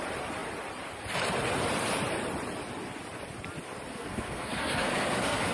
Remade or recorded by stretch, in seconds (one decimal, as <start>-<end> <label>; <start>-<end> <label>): 0.0-3.9 recorded; 3.9-5.5 remade